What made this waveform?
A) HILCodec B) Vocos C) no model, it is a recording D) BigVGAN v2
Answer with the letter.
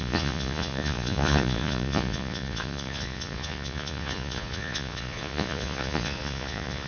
B